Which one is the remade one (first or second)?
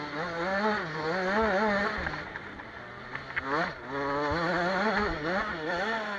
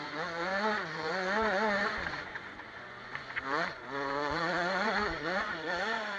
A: second